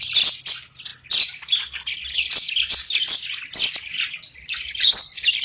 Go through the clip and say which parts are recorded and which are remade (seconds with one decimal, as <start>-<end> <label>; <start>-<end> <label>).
0.0-0.9 remade; 0.9-4.1 recorded; 4.1-5.4 remade